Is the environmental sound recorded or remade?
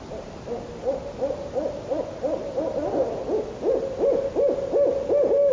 recorded